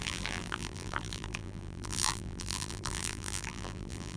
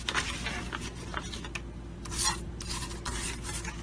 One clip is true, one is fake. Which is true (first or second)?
second